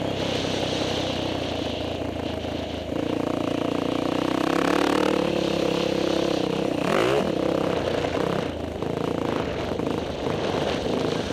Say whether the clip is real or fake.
real